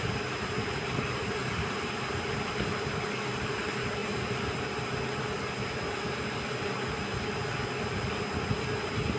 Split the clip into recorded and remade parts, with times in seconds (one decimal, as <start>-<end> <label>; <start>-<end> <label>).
0.0-1.4 recorded; 1.4-2.5 remade; 2.5-9.2 recorded